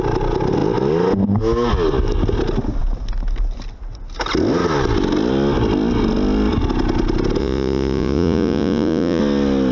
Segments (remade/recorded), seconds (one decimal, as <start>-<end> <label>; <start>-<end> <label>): 0.0-7.4 recorded; 7.4-9.2 remade; 9.2-9.7 recorded